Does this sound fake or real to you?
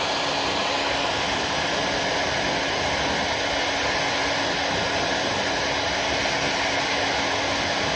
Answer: real